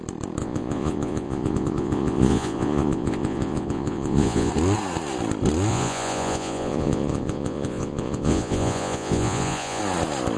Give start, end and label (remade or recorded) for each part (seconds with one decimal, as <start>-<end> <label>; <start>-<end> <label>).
0.0-0.4 recorded; 0.4-4.5 remade; 4.5-5.7 recorded; 5.7-9.8 remade; 9.8-10.4 recorded